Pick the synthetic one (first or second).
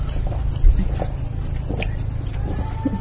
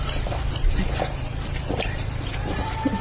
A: second